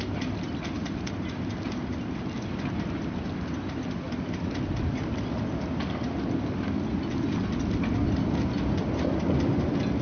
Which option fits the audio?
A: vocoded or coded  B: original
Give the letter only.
B